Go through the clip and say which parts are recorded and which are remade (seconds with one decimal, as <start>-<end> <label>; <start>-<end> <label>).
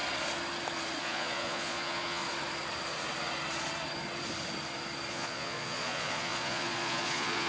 0.0-1.0 recorded; 1.0-2.2 remade; 2.2-5.1 recorded; 5.1-7.5 remade